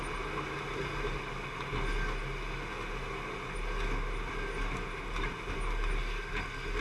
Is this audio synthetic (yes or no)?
no